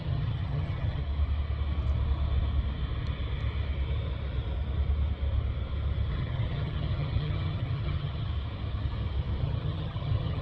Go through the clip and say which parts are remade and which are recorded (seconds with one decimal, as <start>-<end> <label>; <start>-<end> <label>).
0.0-1.0 remade; 1.0-6.1 recorded; 6.1-8.3 remade; 8.3-9.4 recorded; 9.4-10.4 remade